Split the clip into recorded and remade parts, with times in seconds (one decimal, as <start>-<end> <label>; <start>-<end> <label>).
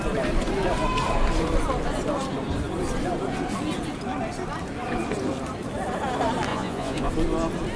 0.0-6.5 recorded; 6.5-7.1 remade; 7.1-7.8 recorded